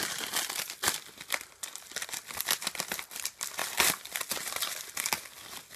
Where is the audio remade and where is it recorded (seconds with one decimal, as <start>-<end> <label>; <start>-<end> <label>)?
0.0-5.8 recorded